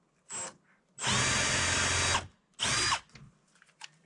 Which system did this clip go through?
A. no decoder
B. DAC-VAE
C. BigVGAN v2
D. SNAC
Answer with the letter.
A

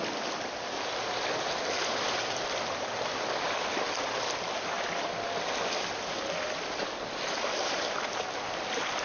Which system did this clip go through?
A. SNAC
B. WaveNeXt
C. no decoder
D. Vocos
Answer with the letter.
C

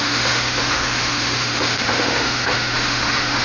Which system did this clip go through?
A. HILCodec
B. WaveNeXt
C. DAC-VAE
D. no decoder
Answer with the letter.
C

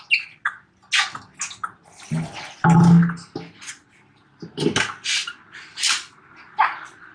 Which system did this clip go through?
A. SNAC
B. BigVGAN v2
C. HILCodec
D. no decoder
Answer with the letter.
D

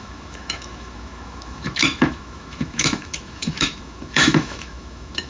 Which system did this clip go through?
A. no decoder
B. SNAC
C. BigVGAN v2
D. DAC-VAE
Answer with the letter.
D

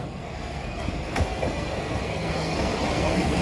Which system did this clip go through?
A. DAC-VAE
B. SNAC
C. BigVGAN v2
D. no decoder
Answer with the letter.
B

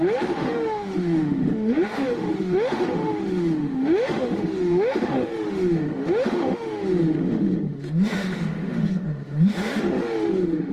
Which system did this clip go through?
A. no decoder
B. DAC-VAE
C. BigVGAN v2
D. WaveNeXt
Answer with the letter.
B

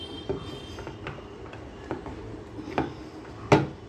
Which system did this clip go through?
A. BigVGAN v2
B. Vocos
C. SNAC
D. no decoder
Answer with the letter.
D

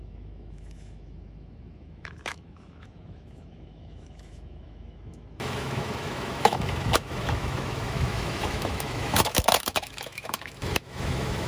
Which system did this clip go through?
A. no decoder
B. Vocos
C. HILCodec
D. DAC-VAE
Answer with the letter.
D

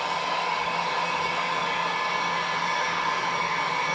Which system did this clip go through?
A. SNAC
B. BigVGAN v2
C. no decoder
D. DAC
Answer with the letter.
D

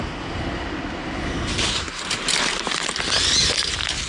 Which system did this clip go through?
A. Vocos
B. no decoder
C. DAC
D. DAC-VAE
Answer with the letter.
B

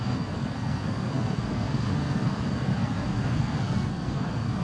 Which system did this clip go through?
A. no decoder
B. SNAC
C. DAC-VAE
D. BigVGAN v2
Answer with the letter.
B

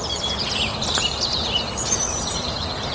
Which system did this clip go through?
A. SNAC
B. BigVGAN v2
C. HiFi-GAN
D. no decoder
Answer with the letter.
B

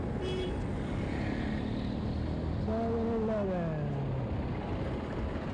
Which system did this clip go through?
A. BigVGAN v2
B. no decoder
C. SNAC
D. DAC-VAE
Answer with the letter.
B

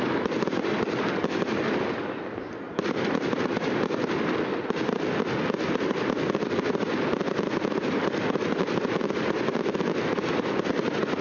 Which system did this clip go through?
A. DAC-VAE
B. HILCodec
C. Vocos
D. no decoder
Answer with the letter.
D